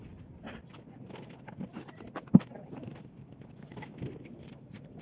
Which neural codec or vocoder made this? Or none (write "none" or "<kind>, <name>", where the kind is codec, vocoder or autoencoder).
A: none